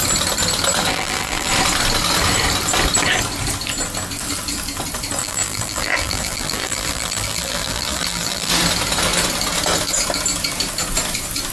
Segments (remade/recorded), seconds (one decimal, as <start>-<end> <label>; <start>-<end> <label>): 0.0-0.9 recorded; 0.9-1.5 remade; 1.5-5.2 recorded; 5.2-8.5 remade; 8.5-11.5 recorded